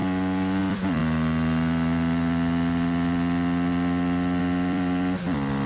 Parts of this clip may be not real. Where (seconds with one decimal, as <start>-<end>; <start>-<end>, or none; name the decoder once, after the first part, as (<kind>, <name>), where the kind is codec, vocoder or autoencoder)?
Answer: 0.6-1.0 (vocoder, BigVGAN v2); 4.4-5.7